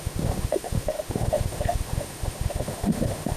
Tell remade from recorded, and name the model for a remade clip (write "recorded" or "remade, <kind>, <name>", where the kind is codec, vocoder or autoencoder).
remade, autoencoder, DAC-VAE